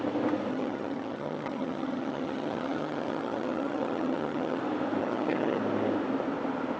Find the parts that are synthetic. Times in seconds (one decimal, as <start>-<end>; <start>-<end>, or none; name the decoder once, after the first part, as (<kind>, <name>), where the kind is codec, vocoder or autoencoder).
0.5-4.6 (vocoder, HiFi-GAN); 5.0-5.6